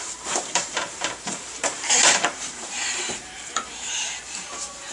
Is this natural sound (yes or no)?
no